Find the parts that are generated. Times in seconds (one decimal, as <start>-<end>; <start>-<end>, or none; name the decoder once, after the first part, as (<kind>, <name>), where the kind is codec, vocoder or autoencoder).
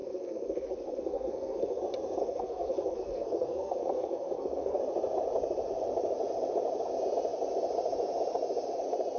0.0-1.8 (codec, SNAC); 2.2-4.8